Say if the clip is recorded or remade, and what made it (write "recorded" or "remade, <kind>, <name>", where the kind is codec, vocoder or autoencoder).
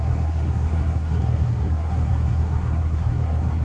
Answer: remade, codec, SNAC